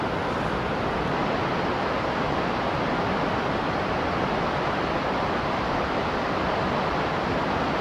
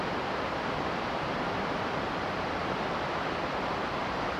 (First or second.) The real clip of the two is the first